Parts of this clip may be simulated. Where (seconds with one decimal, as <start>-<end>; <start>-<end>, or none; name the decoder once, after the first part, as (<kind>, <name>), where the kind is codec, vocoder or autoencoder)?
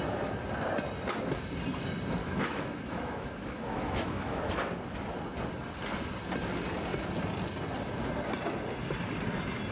2.2-4.5 (autoencoder, DAC-VAE)